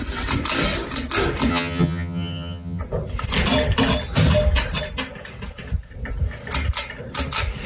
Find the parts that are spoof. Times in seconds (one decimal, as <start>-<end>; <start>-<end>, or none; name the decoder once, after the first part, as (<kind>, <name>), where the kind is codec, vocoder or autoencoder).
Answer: 1.5-2.8 (vocoder, HiFi-GAN)

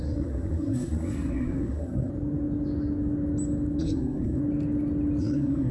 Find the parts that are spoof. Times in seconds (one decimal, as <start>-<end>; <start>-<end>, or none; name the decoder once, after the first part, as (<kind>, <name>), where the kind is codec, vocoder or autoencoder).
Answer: 0.0-2.1 (codec, SNAC); 3.8-4.4; 5.2-5.7